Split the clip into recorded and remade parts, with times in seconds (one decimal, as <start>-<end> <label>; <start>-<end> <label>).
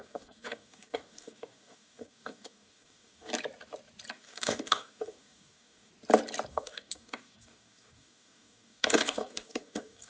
0.0-3.3 remade; 3.3-4.1 recorded; 4.1-5.9 remade; 5.9-6.5 recorded; 6.5-10.1 remade